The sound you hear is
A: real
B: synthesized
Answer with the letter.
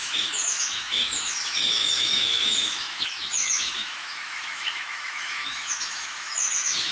B